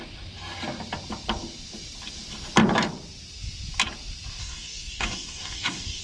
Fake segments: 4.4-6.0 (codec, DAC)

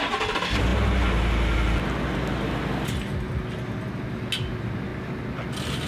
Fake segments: none

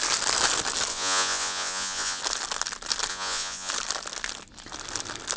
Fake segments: 0.9-2.2 (vocoder, Vocos); 3.1-3.7

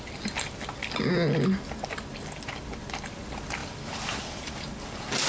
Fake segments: 3.6-4.5 (vocoder, BigVGAN v2)

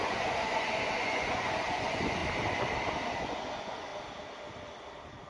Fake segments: 0.0-2.2 (vocoder, Vocos); 3.2-3.9

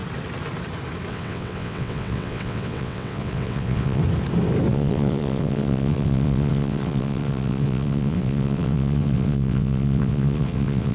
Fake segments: 1.1-4.0 (vocoder, WaveNeXt); 4.7-10.9

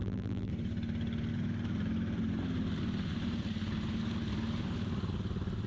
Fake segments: 0.0-0.5 (vocoder, BigVGAN v2)